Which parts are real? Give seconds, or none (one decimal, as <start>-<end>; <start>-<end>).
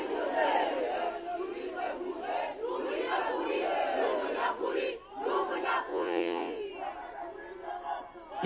0.0-5.9; 6.6-8.5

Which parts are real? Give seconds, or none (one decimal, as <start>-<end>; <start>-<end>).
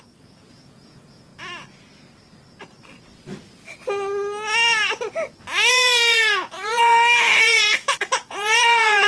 1.3-5.7; 6.9-7.4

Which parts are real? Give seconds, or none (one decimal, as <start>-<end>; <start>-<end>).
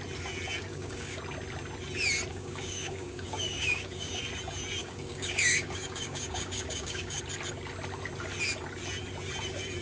0.0-0.7; 1.2-2.3; 4.2-4.8; 7.2-9.8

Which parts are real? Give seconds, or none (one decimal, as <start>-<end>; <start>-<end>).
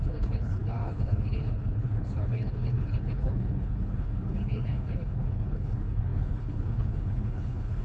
none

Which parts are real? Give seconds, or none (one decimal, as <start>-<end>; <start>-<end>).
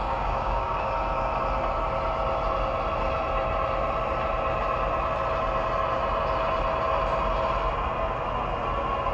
0.9-9.1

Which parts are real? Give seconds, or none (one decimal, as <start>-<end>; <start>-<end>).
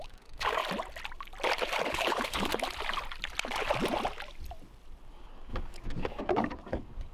0.6-1.9; 2.5-5.1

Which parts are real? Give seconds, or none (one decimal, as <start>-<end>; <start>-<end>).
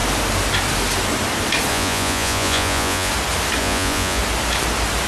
0.0-1.7; 3.1-3.6; 4.2-5.1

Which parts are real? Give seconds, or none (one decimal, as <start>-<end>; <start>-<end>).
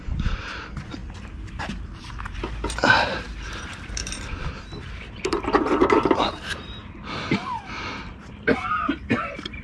6.8-7.4; 8.2-8.7